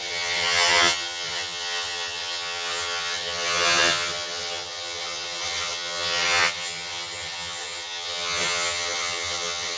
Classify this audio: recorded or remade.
remade